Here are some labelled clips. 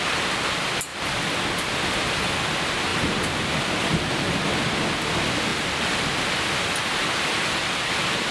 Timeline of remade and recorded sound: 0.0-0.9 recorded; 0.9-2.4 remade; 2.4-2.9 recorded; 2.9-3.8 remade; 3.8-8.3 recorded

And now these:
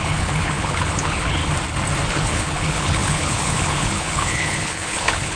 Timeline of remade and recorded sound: 0.0-1.4 remade; 1.4-2.1 recorded; 2.1-5.4 remade

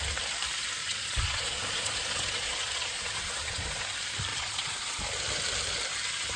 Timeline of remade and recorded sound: 0.0-0.8 recorded; 0.8-3.8 remade; 3.8-4.3 recorded; 4.3-5.0 remade; 5.0-6.4 recorded

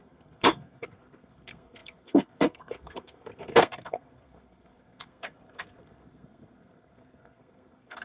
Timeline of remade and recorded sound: 0.0-8.0 remade